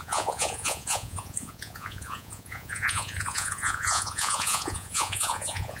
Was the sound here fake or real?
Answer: fake